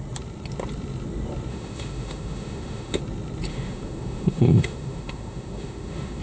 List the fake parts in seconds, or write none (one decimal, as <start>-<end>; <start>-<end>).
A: 1.5-3.0; 3.5-6.2